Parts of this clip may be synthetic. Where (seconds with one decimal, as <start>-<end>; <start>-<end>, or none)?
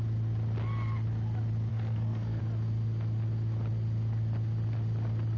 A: 1.7-2.4